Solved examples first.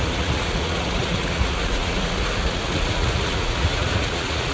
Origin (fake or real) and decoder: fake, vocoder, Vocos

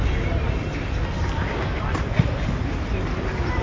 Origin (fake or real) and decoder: real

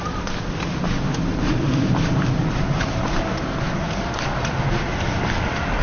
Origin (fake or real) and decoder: real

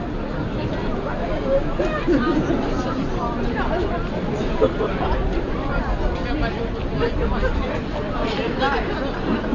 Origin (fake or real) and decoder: real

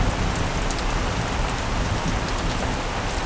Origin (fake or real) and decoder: real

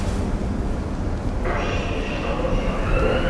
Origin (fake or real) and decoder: real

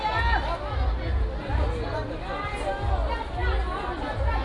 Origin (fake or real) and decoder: real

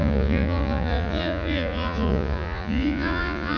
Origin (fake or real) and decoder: fake, vocoder, Vocos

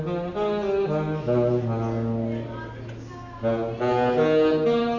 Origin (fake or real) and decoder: real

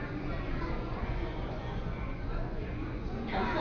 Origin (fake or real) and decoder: fake, vocoder, Vocos